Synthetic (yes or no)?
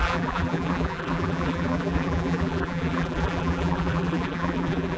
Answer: yes